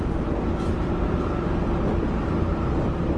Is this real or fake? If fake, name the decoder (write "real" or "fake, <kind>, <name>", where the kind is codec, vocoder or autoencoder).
real